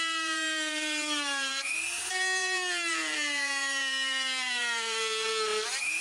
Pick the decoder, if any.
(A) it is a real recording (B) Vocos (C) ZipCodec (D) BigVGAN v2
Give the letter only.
D